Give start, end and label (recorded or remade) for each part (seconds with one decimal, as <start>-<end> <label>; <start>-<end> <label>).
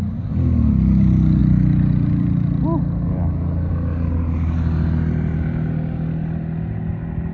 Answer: 0.0-7.3 recorded